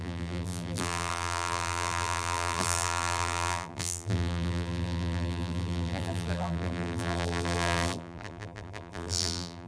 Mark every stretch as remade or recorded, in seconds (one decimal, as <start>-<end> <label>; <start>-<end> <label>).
0.0-9.7 remade